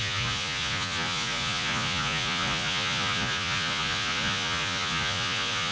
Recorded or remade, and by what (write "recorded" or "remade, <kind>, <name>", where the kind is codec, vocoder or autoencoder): remade, vocoder, Vocos